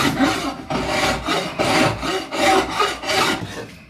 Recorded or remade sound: recorded